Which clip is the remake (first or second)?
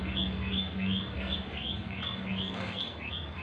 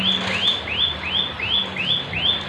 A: first